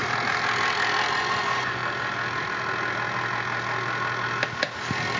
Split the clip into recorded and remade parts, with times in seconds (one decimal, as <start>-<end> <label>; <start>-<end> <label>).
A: 0.0-1.1 recorded; 1.1-1.8 remade; 1.8-5.2 recorded